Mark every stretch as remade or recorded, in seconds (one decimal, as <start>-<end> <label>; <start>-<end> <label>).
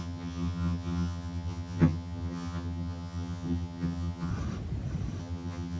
0.0-4.3 remade; 4.3-5.2 recorded; 5.2-5.8 remade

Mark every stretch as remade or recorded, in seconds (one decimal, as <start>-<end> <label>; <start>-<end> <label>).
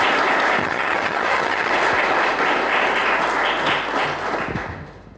0.0-0.6 recorded; 0.6-1.7 remade; 1.7-5.2 recorded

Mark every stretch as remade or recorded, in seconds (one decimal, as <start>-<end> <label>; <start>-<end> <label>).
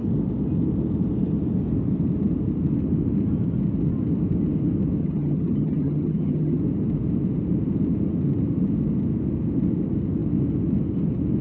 0.0-5.0 recorded; 5.0-6.6 remade; 6.6-11.4 recorded